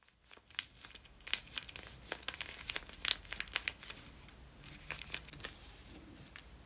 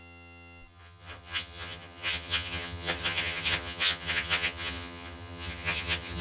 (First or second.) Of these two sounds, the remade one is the second